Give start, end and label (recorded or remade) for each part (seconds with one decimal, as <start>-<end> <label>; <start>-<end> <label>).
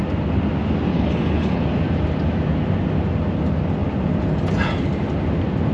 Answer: 0.0-0.9 recorded; 0.9-1.6 remade; 1.6-5.7 recorded